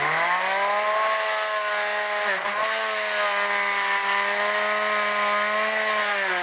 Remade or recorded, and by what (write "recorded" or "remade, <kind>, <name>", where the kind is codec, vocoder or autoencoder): recorded